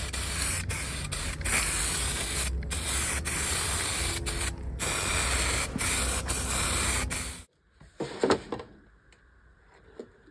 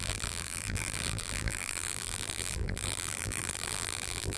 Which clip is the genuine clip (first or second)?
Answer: first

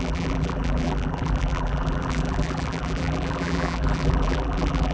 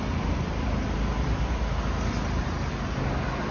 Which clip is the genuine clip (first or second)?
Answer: second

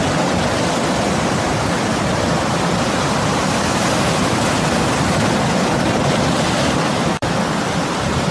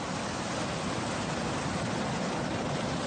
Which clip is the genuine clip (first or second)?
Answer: second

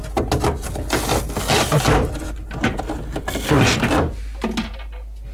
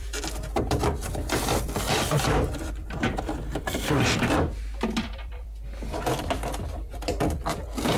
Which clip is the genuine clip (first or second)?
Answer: first